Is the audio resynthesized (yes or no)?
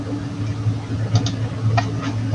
no